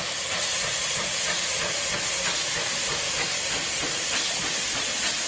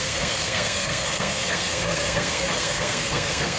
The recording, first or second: first